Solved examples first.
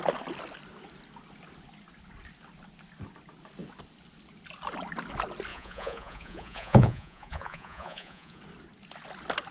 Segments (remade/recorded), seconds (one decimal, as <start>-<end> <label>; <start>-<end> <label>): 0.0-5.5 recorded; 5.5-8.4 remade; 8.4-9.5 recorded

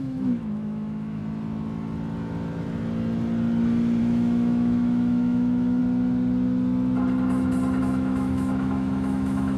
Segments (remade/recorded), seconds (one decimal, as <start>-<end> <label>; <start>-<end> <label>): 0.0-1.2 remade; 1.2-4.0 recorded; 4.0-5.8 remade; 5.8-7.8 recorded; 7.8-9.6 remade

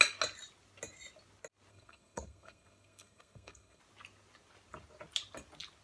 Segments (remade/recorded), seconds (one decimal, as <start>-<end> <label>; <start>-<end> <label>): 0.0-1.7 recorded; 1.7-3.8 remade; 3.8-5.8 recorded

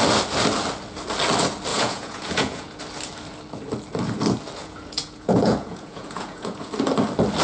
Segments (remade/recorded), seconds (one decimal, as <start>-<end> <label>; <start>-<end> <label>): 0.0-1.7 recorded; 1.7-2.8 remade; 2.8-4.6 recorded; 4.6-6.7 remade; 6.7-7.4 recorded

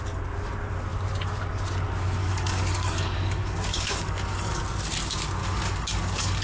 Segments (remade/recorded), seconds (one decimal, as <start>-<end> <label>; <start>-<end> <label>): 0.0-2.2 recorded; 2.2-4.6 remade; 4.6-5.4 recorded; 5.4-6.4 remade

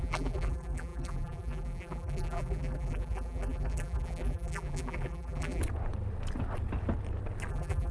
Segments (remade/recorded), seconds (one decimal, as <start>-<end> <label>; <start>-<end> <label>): 0.0-5.6 remade; 5.6-7.5 recorded; 7.5-7.9 remade

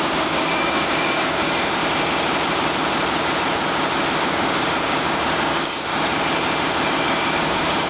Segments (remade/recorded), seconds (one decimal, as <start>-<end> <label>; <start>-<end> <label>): 0.0-1.8 remade; 1.8-4.2 recorded; 4.2-5.9 remade; 5.9-6.9 recorded; 6.9-7.9 remade